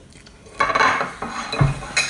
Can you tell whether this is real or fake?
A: real